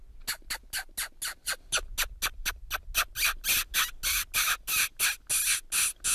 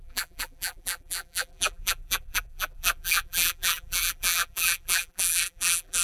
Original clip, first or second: first